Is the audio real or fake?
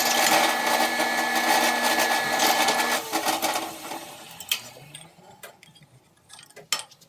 real